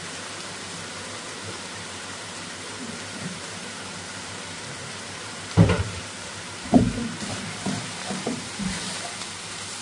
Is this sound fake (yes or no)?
yes